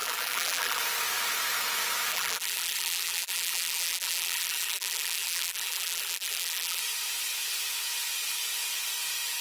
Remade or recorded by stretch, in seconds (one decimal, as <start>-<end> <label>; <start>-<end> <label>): 0.0-0.8 remade; 0.8-2.1 recorded; 2.1-6.8 remade; 6.8-9.4 recorded